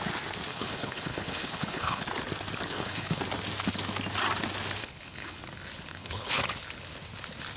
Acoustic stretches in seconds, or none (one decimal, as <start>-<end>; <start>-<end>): 0.0-0.5; 2.0-2.7; 3.2-4.8; 5.4-5.9; 6.4-7.6